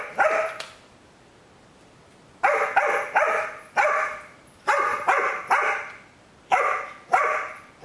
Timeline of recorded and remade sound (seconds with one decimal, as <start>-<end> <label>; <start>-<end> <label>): 0.0-7.8 recorded